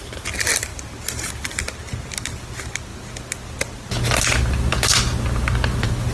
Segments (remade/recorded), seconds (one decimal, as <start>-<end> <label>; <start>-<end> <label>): 0.0-6.1 recorded